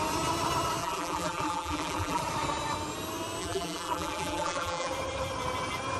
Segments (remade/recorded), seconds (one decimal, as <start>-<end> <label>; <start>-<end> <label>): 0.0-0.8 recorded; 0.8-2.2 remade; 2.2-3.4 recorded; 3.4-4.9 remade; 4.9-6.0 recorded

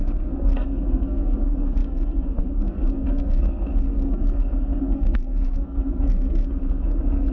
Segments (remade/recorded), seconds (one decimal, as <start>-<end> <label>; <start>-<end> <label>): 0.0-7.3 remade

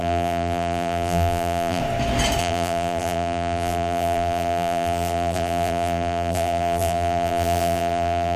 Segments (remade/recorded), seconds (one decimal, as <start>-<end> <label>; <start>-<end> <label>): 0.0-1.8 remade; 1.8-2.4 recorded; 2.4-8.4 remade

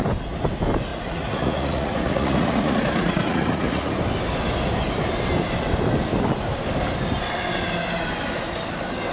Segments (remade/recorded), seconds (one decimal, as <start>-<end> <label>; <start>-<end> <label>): 0.0-0.9 recorded; 0.9-3.9 remade; 3.9-9.1 recorded

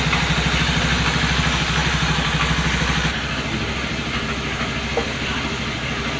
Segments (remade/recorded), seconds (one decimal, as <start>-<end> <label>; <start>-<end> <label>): 0.0-6.2 recorded